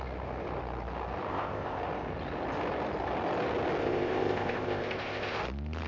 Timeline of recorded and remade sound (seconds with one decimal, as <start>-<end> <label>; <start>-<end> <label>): 0.0-1.3 recorded; 1.3-1.8 remade; 1.8-3.8 recorded; 3.8-5.4 remade; 5.4-5.9 recorded